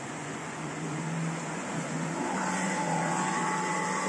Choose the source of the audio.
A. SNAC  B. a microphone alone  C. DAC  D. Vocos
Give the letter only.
D